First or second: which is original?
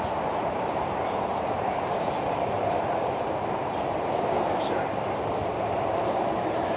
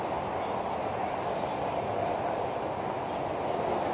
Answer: second